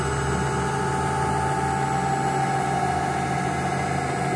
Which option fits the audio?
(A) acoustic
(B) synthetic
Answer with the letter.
A